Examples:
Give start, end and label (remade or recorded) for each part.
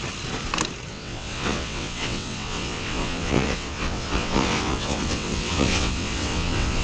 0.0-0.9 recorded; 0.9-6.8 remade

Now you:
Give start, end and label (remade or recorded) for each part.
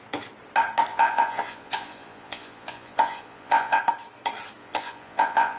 0.0-0.9 recorded; 0.9-3.8 remade; 3.8-4.6 recorded; 4.6-5.6 remade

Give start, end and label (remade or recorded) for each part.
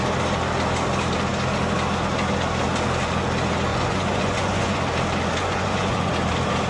0.0-3.7 recorded; 3.7-4.8 remade; 4.8-5.4 recorded; 5.4-6.1 remade; 6.1-6.7 recorded